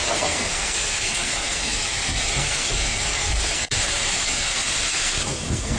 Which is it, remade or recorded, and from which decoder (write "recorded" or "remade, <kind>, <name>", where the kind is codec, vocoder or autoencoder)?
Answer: remade, codec, SNAC